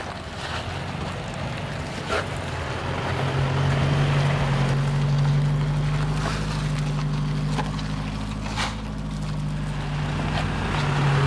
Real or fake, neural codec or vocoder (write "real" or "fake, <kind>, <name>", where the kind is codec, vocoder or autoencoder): real